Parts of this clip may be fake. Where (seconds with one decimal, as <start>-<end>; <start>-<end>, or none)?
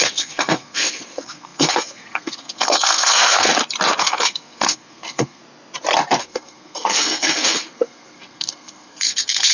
0.0-3.5; 4.0-5.4; 6.2-9.5